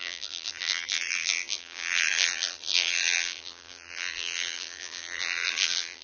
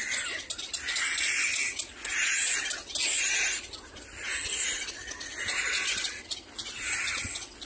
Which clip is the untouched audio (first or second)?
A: second